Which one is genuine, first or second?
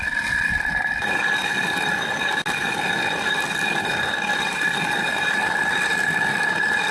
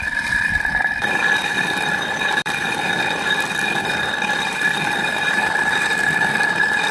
first